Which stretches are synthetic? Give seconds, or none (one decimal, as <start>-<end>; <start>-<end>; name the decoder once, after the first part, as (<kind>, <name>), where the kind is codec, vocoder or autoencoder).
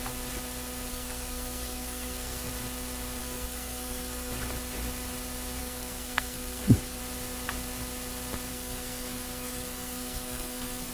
0.9-2.5 (codec, SNAC); 3.2-4.4; 5.6-7.0; 8.5-10.9